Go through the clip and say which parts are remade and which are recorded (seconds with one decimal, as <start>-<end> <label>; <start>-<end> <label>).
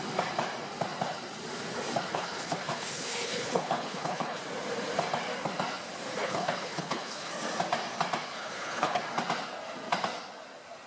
0.0-2.1 recorded; 2.1-4.4 remade; 4.4-6.2 recorded; 6.2-7.3 remade; 7.3-8.3 recorded; 8.3-9.0 remade; 9.0-10.9 recorded